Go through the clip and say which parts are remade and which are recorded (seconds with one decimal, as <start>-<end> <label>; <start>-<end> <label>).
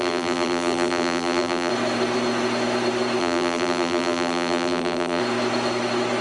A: 0.0-1.7 remade; 1.7-3.2 recorded; 3.2-5.2 remade; 5.2-6.2 recorded